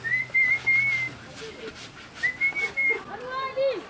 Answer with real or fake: real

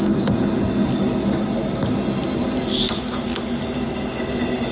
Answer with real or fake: real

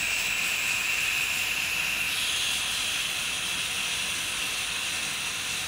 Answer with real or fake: real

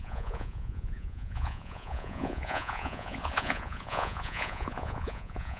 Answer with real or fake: fake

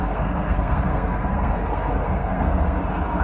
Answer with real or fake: fake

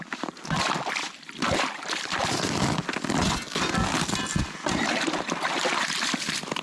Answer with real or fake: real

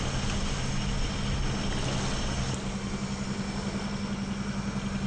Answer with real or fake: real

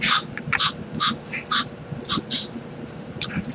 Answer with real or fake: fake